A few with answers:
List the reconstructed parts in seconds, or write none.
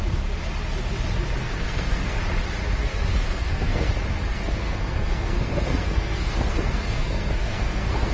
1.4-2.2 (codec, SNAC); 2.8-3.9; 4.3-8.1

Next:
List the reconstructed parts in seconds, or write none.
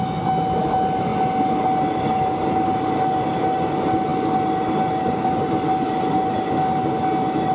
none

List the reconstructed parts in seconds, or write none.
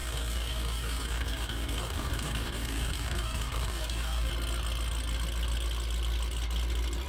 0.0-4.3 (codec, DAC)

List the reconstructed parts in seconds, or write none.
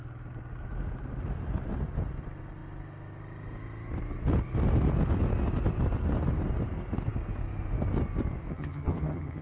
8.5-9.4 (vocoder, HiFi-GAN)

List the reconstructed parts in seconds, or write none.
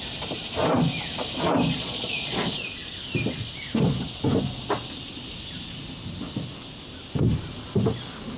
1.7-2.4 (vocoder, Vocos)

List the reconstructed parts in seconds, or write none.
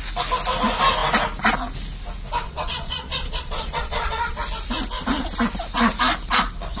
2.4-4.4 (vocoder, Vocos)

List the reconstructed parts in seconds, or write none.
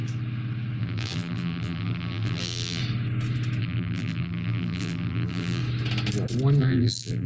0.8-2.8 (vocoder, BigVGAN v2); 3.6-5.6; 6.6-7.3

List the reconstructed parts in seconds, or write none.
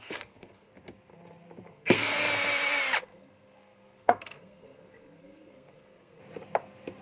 0.0-0.7 (codec, SNAC); 1.7-2.1; 3.0-6.2